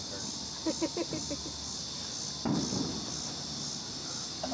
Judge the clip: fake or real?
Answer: real